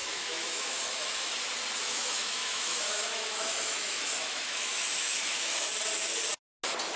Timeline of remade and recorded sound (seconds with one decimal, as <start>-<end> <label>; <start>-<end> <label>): 0.0-1.3 remade; 1.3-1.8 recorded; 1.8-5.7 remade; 5.7-7.0 recorded